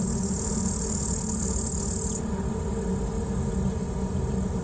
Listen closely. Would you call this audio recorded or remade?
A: recorded